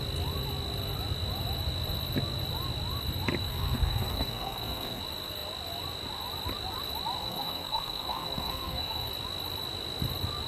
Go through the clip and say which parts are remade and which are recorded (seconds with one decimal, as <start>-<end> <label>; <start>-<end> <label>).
0.0-3.4 recorded; 3.4-5.0 remade; 5.0-7.2 recorded; 7.2-9.1 remade; 9.1-10.5 recorded